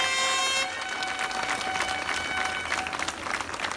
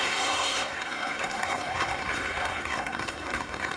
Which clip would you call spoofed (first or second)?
second